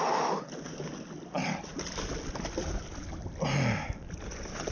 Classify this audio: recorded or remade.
recorded